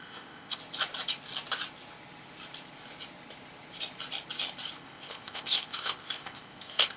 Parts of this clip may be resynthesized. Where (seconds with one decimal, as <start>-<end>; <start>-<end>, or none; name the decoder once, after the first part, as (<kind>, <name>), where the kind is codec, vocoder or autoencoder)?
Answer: 0.0-0.6 (codec, ZipCodec); 4.8-7.0